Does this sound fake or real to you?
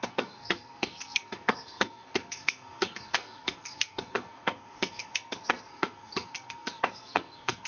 fake